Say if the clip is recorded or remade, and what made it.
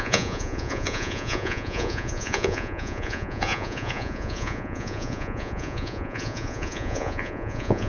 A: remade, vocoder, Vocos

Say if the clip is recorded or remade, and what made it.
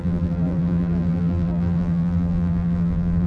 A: remade, vocoder, BigVGAN v2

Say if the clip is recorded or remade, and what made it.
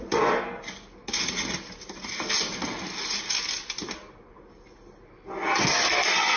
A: recorded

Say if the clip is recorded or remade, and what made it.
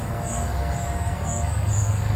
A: remade, codec, SNAC